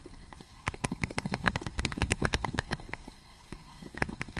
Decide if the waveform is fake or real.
fake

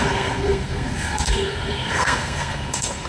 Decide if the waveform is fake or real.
fake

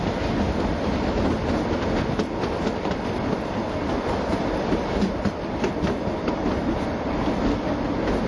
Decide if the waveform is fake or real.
real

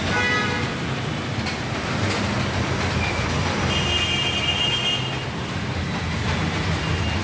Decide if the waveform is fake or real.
real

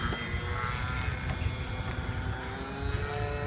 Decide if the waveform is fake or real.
real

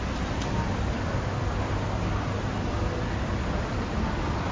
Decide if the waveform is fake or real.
real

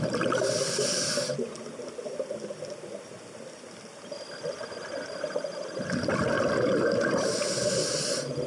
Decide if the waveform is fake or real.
real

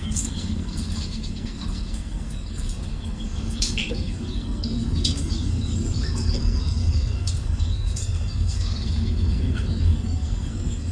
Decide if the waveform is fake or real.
fake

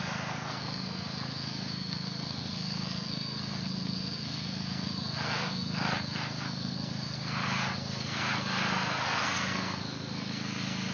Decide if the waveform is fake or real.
fake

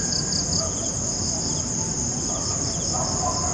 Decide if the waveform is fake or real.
real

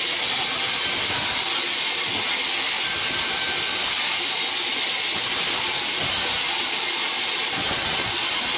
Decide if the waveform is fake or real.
real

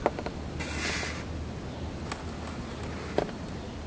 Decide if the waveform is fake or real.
real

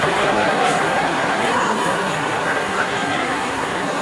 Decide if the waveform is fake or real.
fake